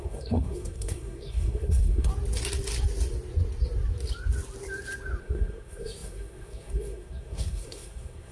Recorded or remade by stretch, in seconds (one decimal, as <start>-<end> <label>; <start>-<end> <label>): 0.0-2.1 remade; 2.1-5.2 recorded; 5.2-8.3 remade